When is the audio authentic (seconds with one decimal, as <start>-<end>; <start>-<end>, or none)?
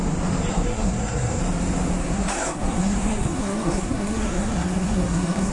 0.0-0.5; 1.4-2.0